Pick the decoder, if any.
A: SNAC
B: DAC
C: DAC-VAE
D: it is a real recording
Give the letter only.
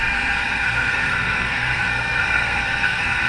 A